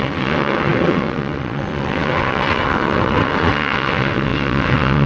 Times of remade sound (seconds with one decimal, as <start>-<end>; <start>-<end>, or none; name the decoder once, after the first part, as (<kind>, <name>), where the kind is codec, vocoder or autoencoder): 0.0-5.1 (vocoder, WaveNeXt)